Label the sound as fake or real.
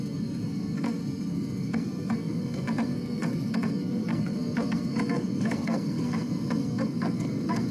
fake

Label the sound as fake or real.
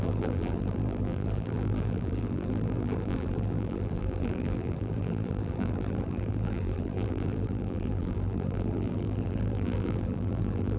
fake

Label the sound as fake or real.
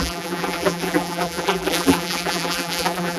fake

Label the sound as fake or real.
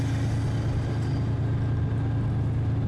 real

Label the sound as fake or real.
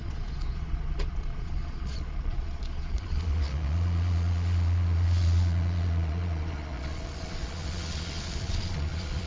fake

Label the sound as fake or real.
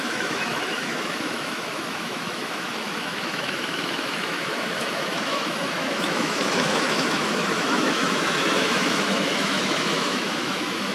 fake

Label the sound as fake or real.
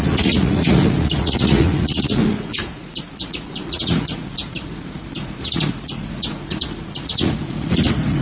fake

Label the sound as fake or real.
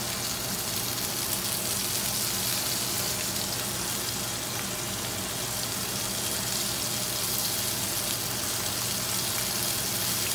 real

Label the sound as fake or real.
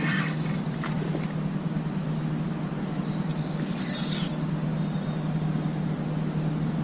real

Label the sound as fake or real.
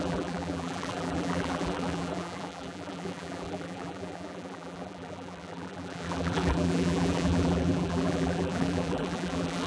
fake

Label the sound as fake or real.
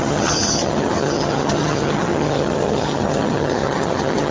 fake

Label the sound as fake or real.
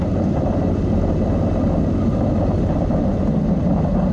real